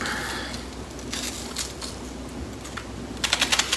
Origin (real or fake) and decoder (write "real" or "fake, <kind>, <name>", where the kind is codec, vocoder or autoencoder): real